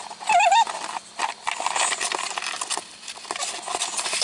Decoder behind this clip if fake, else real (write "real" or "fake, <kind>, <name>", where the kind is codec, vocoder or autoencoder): real